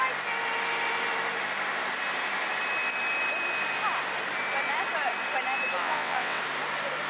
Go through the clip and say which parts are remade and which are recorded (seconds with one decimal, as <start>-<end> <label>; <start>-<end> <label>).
0.0-5.8 recorded; 5.8-6.4 remade; 6.4-7.1 recorded